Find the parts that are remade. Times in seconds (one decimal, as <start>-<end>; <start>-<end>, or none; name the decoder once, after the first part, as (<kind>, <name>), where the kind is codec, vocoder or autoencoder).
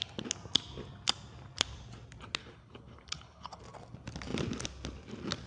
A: 2.4-3.6 (codec, HILCodec)